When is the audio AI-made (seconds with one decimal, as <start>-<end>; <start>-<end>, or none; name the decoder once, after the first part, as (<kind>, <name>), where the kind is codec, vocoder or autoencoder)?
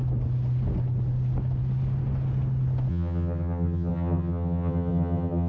2.9-5.5 (vocoder, HiFi-GAN)